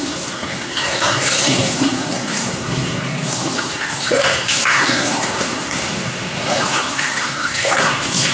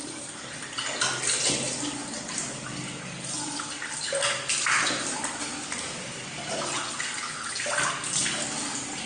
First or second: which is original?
second